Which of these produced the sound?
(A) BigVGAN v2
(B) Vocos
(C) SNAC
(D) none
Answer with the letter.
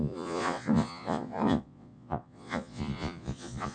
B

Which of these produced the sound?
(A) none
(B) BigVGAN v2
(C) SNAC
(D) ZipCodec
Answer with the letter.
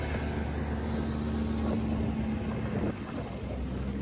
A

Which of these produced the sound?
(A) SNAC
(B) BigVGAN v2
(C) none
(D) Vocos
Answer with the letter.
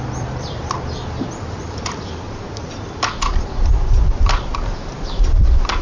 B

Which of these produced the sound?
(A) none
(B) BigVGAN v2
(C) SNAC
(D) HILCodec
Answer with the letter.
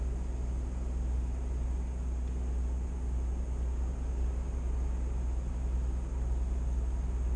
A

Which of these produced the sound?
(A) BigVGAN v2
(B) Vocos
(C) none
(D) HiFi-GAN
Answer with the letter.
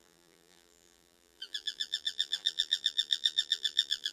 A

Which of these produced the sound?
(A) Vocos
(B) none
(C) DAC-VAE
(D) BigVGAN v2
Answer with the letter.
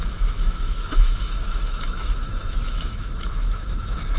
C